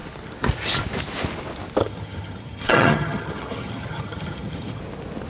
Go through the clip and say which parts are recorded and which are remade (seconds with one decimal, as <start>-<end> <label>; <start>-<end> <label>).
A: 0.0-1.8 recorded; 1.8-4.8 remade; 4.8-5.3 recorded